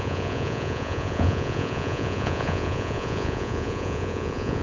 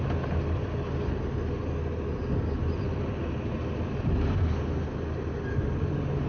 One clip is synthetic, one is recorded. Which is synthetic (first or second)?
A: first